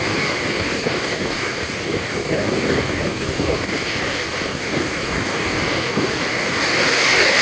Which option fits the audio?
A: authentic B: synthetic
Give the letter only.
B